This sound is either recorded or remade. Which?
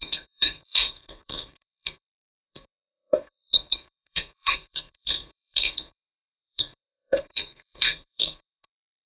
remade